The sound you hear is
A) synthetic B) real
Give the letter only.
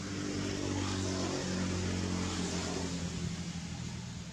B